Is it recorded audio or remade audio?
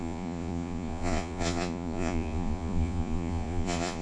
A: remade